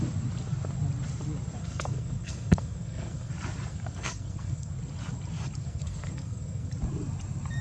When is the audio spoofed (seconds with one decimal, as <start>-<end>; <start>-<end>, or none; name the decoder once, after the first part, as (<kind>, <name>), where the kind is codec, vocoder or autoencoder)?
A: 1.6-3.3 (codec, SNAC); 3.7-4.7; 5.6-6.7